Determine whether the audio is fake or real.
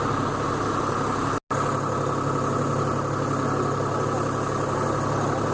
real